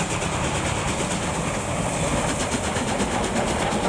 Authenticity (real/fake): real